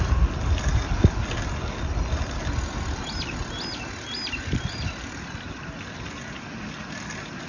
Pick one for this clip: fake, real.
real